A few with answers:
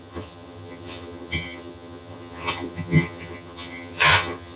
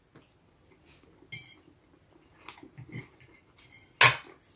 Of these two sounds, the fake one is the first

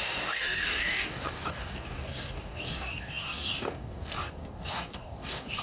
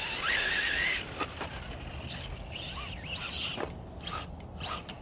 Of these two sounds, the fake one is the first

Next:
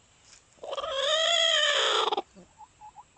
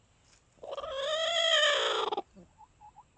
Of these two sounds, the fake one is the first